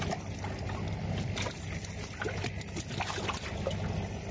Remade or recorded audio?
recorded